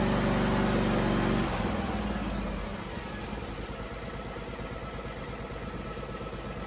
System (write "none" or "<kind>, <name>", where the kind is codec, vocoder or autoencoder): none